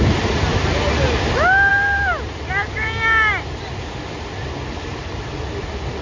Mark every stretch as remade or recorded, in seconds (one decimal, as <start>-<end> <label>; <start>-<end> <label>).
0.0-6.0 recorded